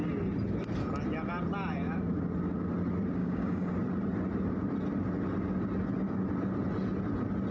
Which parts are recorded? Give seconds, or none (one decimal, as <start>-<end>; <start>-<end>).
0.0-3.2; 3.7-7.5